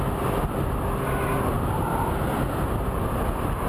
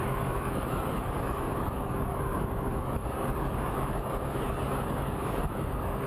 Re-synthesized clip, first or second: second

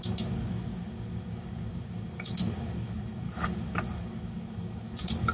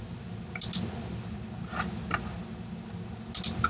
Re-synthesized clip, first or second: first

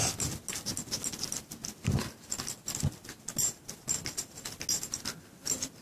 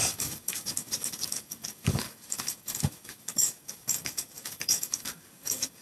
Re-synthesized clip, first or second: second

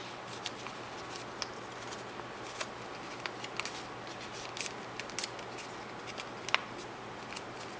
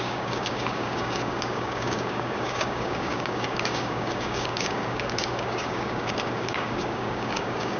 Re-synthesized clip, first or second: second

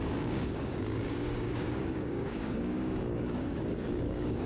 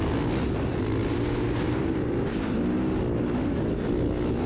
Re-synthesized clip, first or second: first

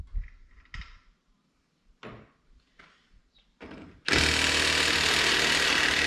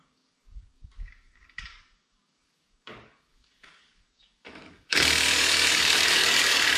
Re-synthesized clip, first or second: second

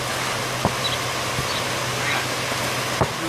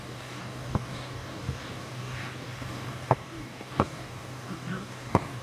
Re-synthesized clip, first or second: second